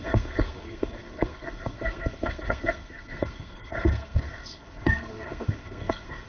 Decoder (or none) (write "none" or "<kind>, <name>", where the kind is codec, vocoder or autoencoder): codec, SNAC